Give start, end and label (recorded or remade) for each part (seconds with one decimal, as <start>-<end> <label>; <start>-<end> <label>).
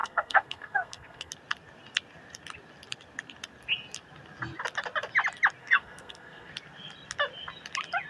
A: 0.0-1.3 remade; 1.3-5.6 recorded; 5.6-6.5 remade; 6.5-8.1 recorded